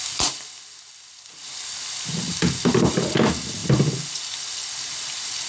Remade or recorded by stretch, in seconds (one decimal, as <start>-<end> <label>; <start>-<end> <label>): 0.0-5.5 recorded